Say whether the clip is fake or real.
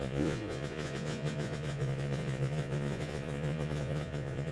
fake